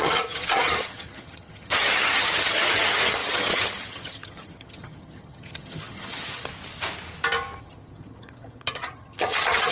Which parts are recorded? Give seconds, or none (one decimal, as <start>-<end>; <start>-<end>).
6.5-7.6